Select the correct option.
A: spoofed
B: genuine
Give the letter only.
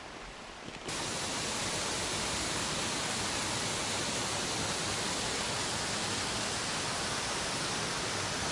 B